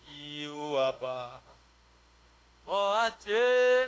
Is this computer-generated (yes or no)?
yes